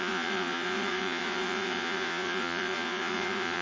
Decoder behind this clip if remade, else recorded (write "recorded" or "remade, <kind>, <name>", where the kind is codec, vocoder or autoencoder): remade, vocoder, Vocos